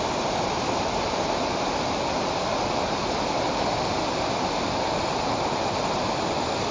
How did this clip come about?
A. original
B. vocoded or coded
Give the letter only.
A